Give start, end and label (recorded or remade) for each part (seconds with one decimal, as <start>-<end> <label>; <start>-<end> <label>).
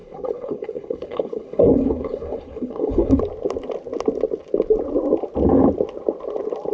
0.0-3.2 remade; 3.2-6.7 recorded